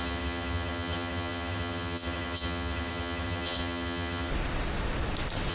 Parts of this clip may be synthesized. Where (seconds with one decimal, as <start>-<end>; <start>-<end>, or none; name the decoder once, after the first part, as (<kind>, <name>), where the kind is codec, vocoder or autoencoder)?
0.0-4.3 (vocoder, HiFi-GAN)